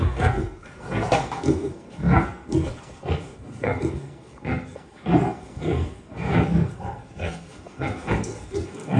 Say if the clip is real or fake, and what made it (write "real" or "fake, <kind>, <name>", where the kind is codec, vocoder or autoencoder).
fake, codec, SNAC